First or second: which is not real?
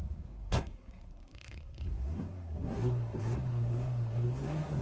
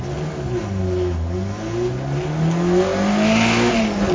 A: first